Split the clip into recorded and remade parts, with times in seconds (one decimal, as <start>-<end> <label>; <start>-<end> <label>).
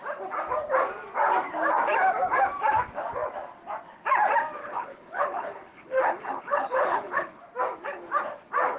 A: 0.0-4.6 recorded; 4.6-7.4 remade; 7.4-8.8 recorded